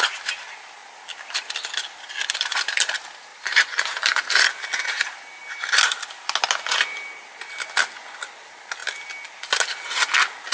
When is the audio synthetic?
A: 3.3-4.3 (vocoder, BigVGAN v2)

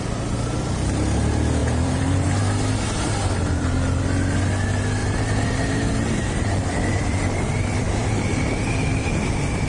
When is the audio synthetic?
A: 1.6-2.4 (vocoder, BigVGAN v2); 5.0-7.0; 8.0-8.8

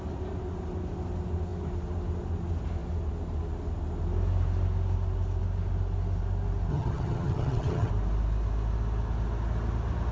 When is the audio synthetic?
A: 6.7-7.9 (vocoder, HiFi-GAN)

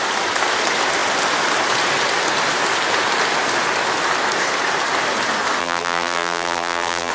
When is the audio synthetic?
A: 5.6-7.1 (vocoder, BigVGAN v2)

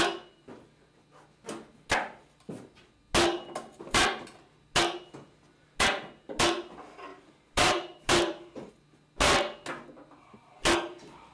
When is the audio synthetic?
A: 7.1-8.7 (vocoder, BigVGAN v2)

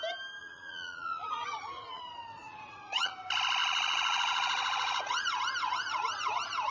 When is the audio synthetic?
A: 0.4-2.0 (vocoder, Vocos); 2.4-3.1; 3.6-5.4